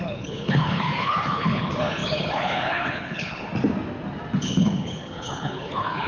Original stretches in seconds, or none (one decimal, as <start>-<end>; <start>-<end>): 3.5-4.4